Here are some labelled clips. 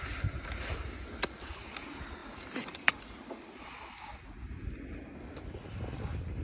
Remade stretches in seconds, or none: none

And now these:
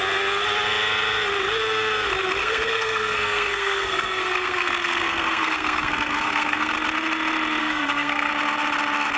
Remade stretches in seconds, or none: 2.4-6.7; 7.6-8.3

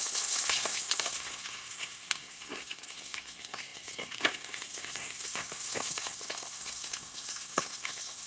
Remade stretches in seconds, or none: 0.0-8.3

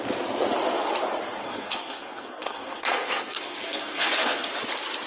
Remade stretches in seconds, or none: 1.4-4.5

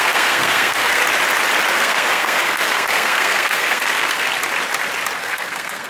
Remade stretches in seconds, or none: 0.0-1.0; 1.7-4.3; 5.2-5.9

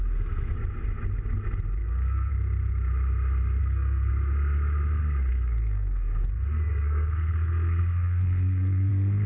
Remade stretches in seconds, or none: 1.8-2.3; 3.6-4.1; 5.3-8.9